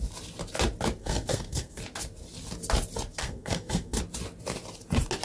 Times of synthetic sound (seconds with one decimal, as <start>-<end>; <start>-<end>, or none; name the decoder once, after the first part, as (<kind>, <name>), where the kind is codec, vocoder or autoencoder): 1.0-1.8 (codec, SNAC); 3.2-4.0